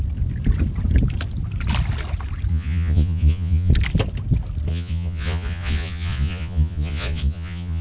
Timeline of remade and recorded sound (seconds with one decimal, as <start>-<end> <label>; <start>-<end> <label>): 0.0-2.5 recorded; 2.5-3.7 remade; 3.7-4.7 recorded; 4.7-7.8 remade

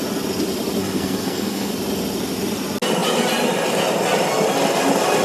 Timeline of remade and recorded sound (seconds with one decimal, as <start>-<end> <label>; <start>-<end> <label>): 0.0-0.8 recorded; 0.8-1.7 remade; 1.7-5.2 recorded

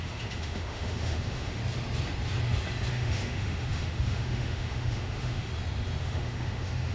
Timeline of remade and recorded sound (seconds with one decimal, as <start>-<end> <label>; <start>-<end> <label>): 0.0-1.6 remade; 1.6-2.9 recorded; 2.9-5.5 remade; 5.5-6.0 recorded; 6.0-6.9 remade

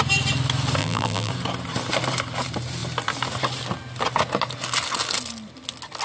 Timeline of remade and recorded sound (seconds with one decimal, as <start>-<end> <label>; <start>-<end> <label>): 0.0-0.8 recorded; 0.8-1.3 remade; 1.3-6.0 recorded

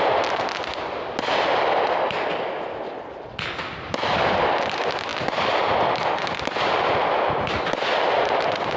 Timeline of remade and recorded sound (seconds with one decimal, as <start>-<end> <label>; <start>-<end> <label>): 0.0-8.8 recorded

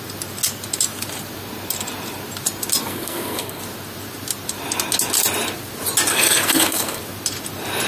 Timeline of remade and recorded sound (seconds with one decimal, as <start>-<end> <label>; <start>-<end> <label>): 0.0-2.8 recorded; 2.8-3.6 remade; 3.6-6.1 recorded; 6.1-7.0 remade; 7.0-7.9 recorded

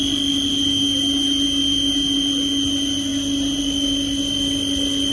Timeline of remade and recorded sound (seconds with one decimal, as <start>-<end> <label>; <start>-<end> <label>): 0.0-5.1 recorded